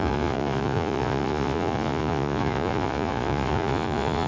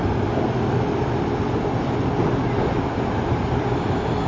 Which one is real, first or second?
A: second